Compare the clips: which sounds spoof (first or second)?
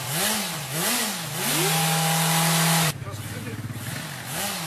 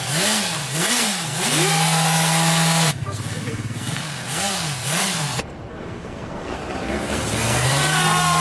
second